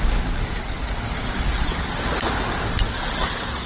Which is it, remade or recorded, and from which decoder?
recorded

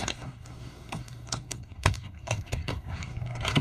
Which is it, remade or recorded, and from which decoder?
remade, codec, SNAC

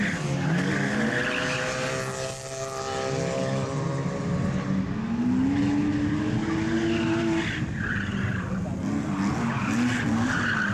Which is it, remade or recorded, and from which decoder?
recorded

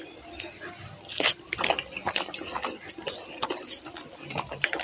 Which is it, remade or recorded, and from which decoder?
recorded